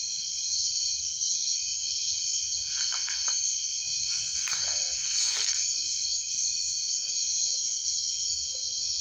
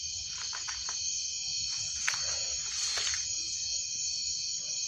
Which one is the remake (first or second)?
first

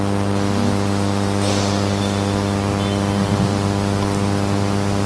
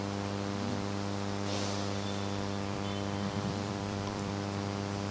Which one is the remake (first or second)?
second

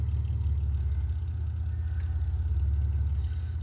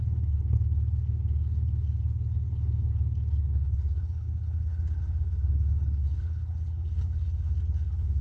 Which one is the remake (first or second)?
second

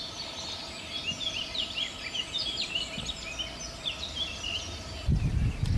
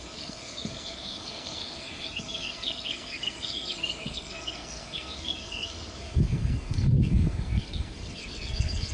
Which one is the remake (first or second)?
second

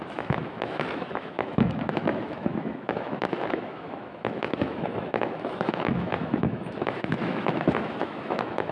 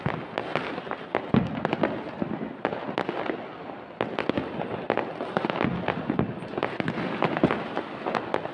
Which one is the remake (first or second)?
first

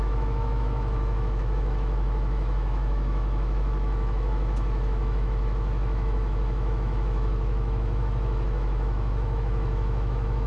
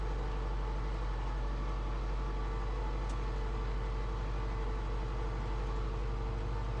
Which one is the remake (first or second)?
first